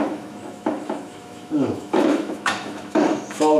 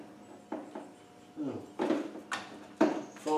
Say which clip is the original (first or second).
second